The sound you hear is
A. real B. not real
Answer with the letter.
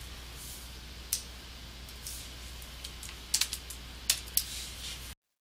A